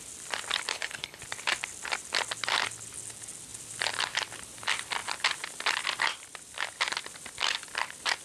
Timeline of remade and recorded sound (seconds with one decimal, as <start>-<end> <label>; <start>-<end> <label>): 0.0-0.7 recorded; 0.7-1.2 remade; 1.2-8.2 recorded